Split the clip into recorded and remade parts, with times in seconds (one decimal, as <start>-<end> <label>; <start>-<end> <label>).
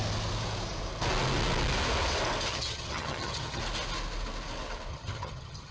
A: 0.0-2.5 recorded; 2.5-3.6 remade; 3.6-4.9 recorded; 4.9-5.7 remade